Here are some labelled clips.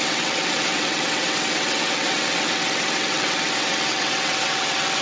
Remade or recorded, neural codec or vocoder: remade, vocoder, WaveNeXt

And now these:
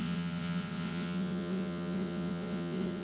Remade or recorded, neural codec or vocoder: remade, vocoder, WaveNeXt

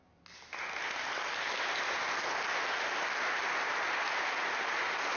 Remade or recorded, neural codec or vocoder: recorded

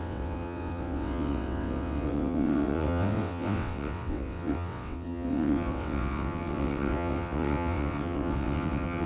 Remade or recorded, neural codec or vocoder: remade, vocoder, WaveNeXt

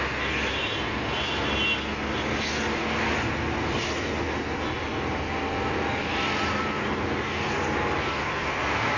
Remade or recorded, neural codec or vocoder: recorded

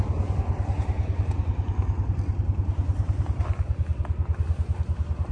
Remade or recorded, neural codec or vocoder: recorded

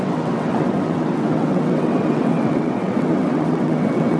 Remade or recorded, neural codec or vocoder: remade, vocoder, WaveNeXt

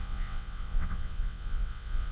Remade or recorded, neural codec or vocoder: remade, vocoder, WaveNeXt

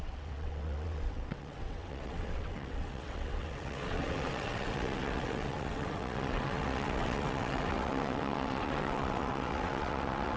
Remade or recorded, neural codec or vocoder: remade, vocoder, WaveNeXt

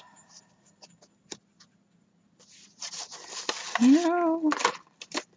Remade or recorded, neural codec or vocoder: recorded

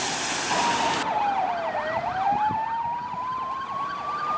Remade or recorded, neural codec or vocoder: recorded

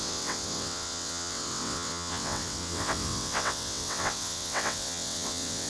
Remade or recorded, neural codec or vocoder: remade, vocoder, WaveNeXt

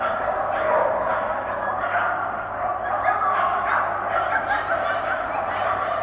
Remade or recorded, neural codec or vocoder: recorded